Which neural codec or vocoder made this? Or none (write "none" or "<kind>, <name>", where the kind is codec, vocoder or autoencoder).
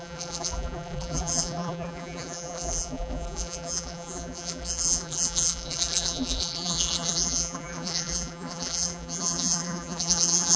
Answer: vocoder, BigVGAN v2